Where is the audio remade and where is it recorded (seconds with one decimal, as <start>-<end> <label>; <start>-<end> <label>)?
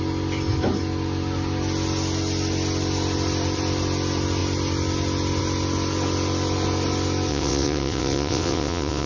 0.0-7.3 recorded; 7.3-9.1 remade